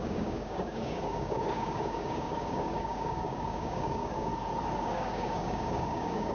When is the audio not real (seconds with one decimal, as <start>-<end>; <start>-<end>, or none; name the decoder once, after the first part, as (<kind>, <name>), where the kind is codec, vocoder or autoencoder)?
0.0-4.3 (codec, DAC); 4.8-6.3